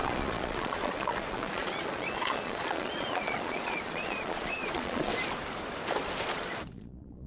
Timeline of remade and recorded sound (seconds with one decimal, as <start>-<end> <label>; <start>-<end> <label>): 0.0-5.1 remade; 5.1-6.2 recorded; 6.2-7.3 remade